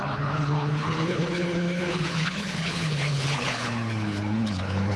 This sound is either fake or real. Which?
fake